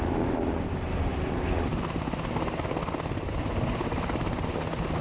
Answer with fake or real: real